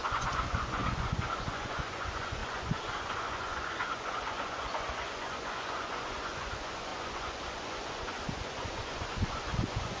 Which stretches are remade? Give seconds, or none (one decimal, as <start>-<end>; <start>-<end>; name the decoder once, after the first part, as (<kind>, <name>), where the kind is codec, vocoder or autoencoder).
0.0-10.0 (vocoder, Vocos)